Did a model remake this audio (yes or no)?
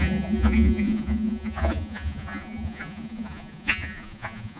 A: yes